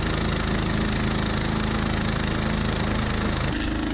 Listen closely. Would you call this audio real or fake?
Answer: real